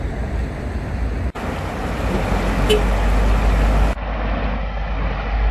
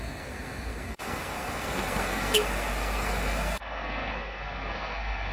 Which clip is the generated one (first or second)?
second